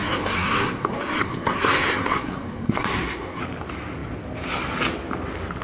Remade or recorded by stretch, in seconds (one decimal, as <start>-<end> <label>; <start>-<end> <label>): 0.0-3.4 remade; 3.4-5.6 recorded